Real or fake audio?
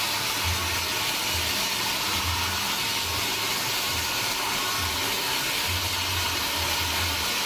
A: real